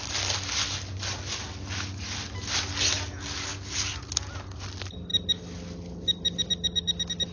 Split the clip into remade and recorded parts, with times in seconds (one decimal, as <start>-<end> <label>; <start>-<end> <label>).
0.0-7.3 recorded